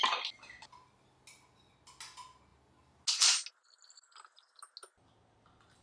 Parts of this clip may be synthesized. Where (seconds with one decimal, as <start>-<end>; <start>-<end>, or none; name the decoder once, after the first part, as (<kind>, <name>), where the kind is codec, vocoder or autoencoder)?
none